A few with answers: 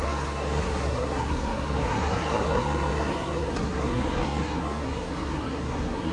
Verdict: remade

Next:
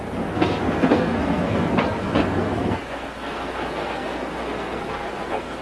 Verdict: remade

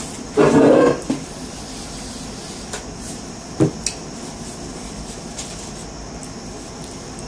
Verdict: recorded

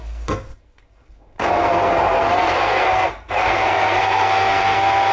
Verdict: remade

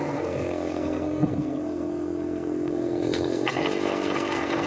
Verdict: remade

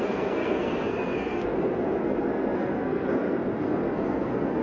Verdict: remade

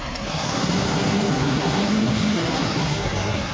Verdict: remade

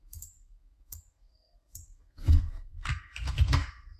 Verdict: remade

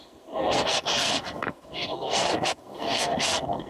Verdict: remade